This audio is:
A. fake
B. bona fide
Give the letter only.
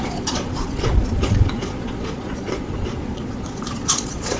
A